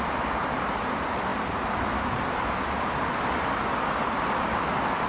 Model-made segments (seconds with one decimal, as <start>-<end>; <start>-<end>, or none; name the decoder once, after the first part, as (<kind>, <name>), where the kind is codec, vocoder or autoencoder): none